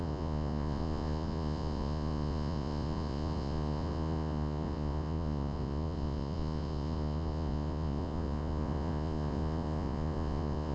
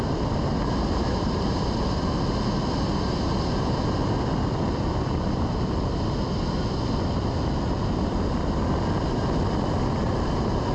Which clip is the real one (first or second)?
second